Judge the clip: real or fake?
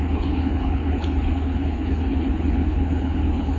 fake